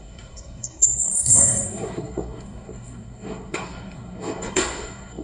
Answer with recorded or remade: remade